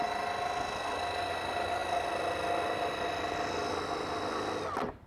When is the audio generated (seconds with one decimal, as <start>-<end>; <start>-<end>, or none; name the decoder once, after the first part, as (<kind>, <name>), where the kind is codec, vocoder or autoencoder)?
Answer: none